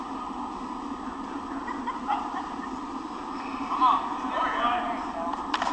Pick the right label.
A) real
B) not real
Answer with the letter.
A